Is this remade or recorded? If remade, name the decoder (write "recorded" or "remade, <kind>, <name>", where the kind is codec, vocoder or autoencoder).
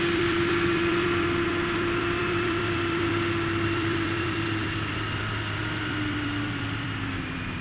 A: remade, vocoder, BigVGAN v2